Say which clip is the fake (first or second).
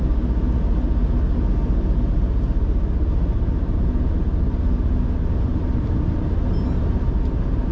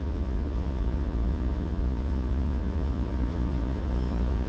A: second